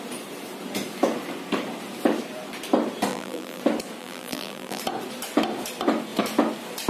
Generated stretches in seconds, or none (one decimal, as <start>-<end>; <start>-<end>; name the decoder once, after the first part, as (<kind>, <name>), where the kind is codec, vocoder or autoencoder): 3.1-3.6 (vocoder, BigVGAN v2); 4.0-4.8